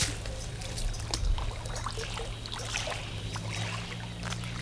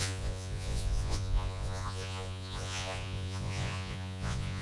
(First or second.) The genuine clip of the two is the first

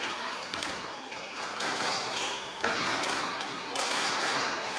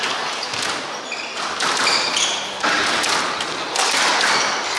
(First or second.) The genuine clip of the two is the second